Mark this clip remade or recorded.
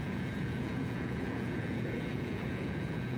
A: remade